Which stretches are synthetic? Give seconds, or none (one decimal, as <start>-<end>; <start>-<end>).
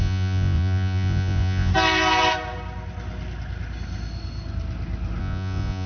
0.0-1.7; 5.2-5.9